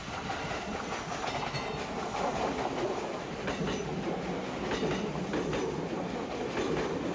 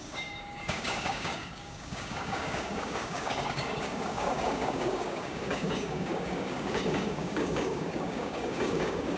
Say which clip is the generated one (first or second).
second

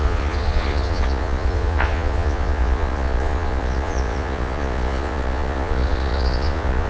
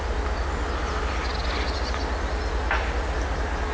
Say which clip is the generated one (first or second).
first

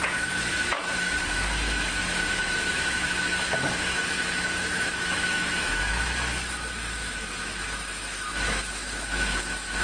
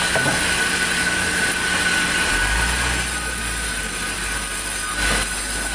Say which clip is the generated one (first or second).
first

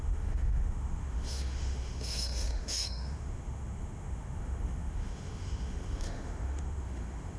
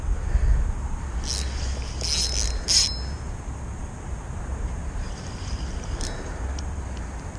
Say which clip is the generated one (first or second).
first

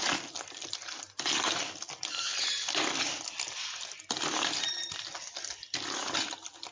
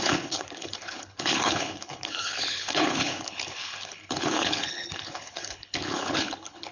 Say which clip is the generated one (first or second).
second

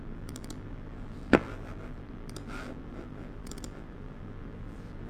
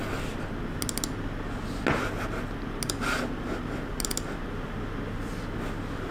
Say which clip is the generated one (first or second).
first